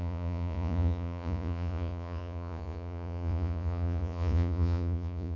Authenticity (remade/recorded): remade